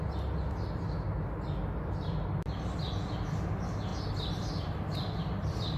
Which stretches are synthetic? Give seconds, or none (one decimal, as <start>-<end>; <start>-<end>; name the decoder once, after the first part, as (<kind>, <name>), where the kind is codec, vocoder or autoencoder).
none